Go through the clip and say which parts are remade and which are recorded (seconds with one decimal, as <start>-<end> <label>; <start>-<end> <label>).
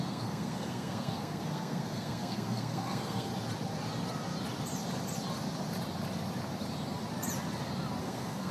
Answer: 0.0-3.3 remade; 3.3-8.0 recorded; 8.0-8.5 remade